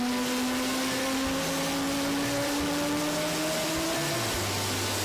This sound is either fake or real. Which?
real